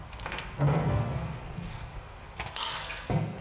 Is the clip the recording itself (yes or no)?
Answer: no